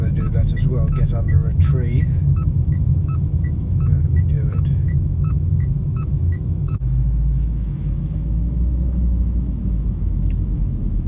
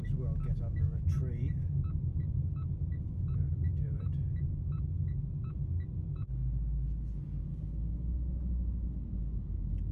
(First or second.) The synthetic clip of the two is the first